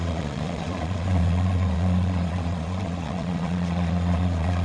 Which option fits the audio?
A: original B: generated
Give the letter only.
B